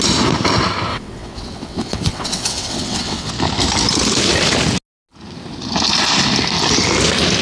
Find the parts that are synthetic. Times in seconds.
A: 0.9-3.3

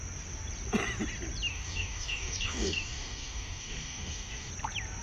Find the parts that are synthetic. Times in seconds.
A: 1.5-4.5

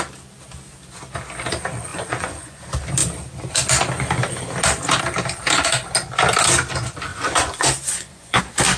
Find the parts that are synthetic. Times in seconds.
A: 1.9-2.6; 7.1-8.4

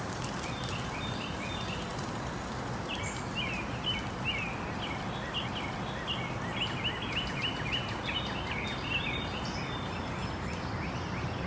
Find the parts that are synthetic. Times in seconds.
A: none

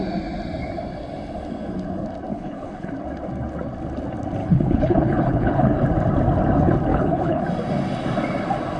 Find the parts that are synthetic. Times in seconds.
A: 2.3-2.9; 4.4-5.8; 6.9-7.4

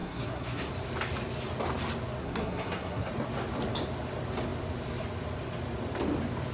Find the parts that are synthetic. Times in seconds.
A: 0.0-0.7; 2.2-3.1

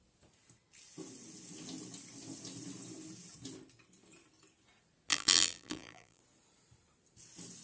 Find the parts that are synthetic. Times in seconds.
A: 5.1-6.2